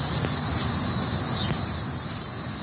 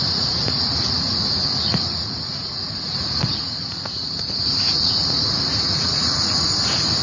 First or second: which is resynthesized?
second